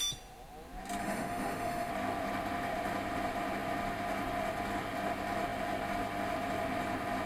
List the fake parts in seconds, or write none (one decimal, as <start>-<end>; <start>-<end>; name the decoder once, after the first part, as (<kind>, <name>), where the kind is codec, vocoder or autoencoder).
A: 1.0-1.9 (autoencoder, DAC-VAE)